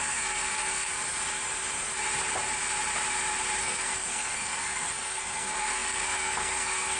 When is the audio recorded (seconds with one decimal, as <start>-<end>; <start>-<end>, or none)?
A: 0.9-3.6